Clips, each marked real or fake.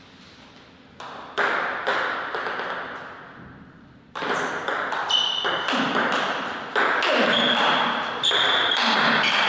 real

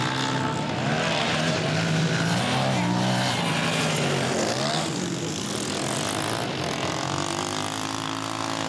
real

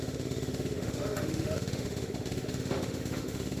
fake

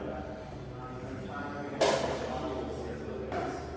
real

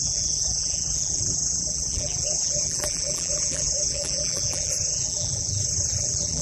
fake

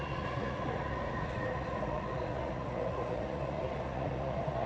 fake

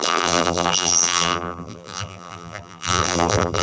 fake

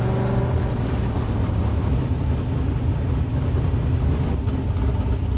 real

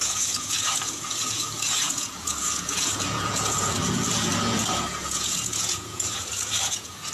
fake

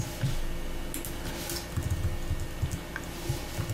real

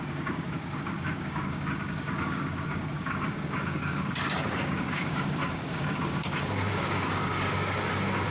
fake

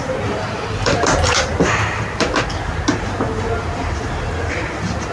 real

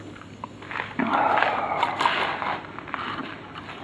real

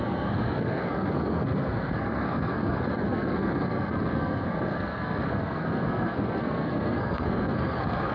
fake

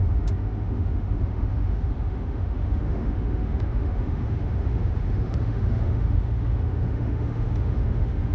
fake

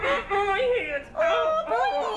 real